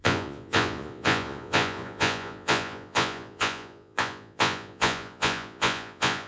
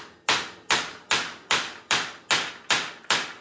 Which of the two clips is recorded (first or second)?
second